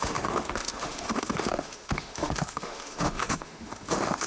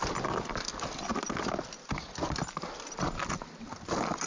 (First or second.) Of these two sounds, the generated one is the first